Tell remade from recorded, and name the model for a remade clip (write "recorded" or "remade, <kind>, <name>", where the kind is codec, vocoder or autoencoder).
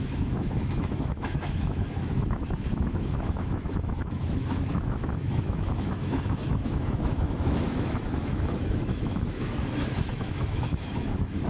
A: remade, autoencoder, DAC-VAE